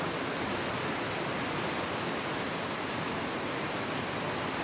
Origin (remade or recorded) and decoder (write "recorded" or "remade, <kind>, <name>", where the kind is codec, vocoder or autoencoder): recorded